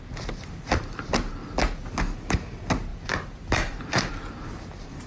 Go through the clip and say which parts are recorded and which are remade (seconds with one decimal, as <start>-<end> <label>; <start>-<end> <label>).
0.0-1.4 remade; 1.4-2.3 recorded; 2.3-5.1 remade